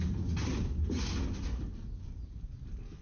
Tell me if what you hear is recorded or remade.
recorded